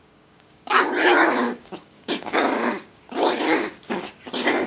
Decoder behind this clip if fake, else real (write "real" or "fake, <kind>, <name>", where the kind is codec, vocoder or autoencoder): fake, codec, DAC